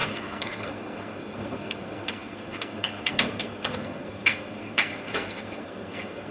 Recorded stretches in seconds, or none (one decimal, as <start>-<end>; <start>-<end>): none